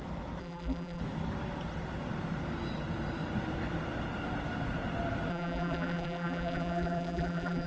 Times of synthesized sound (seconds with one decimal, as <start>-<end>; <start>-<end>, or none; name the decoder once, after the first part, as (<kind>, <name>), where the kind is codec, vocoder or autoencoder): 0.4-1.0 (vocoder, BigVGAN v2); 5.3-7.7